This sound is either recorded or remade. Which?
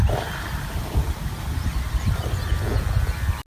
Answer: recorded